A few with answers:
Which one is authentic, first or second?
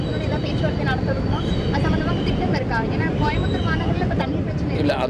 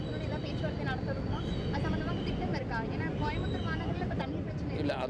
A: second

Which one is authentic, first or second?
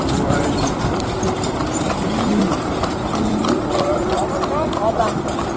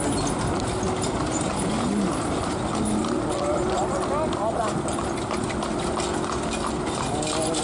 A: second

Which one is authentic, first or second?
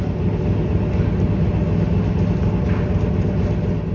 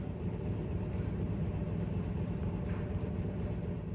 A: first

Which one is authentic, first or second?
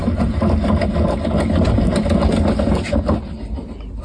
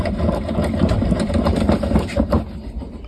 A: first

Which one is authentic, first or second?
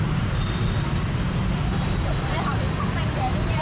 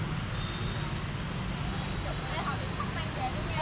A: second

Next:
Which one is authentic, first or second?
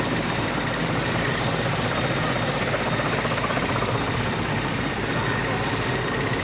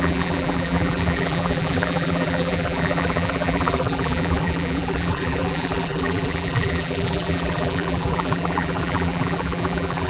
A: first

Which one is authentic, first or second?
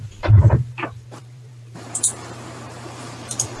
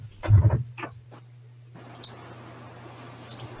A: second